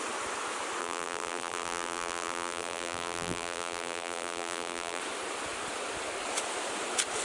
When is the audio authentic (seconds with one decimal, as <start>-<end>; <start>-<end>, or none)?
0.0-0.8; 5.0-7.2